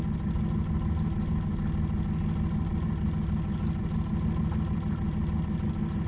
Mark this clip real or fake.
real